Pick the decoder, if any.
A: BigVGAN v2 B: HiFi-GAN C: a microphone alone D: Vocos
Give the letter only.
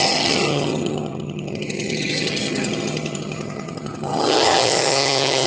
B